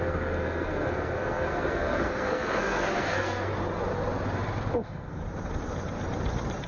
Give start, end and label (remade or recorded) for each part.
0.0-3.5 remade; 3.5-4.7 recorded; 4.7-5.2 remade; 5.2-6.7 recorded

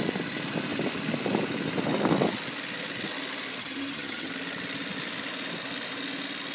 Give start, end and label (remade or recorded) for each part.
0.0-3.6 recorded; 3.6-4.3 remade; 4.3-6.5 recorded

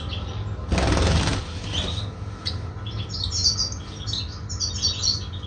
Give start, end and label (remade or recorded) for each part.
0.0-5.5 recorded

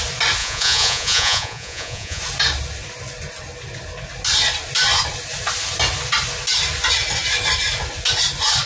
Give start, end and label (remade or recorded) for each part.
0.0-0.4 recorded; 0.4-2.2 remade; 2.2-8.7 recorded

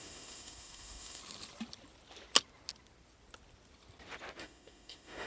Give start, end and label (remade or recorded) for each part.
0.0-1.2 remade; 1.2-4.4 recorded; 4.4-5.3 remade

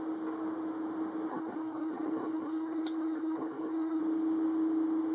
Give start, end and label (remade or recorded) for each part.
0.0-1.3 recorded; 1.3-4.0 remade; 4.0-5.1 recorded

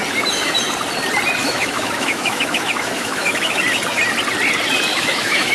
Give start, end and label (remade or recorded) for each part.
0.0-1.4 recorded; 1.4-3.6 remade; 3.6-4.9 recorded; 4.9-5.5 remade

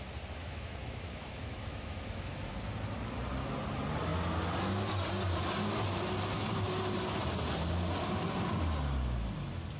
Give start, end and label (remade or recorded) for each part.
0.0-0.4 recorded; 0.4-2.5 remade; 2.5-9.8 recorded